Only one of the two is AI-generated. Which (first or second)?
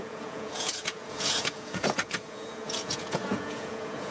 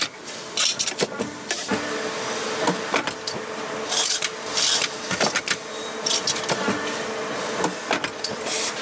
first